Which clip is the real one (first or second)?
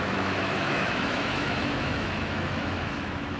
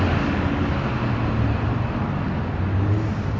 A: second